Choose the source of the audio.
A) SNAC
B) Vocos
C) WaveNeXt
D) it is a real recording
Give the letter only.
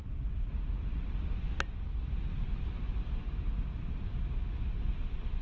D